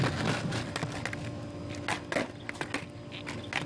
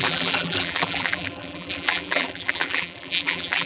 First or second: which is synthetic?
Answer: second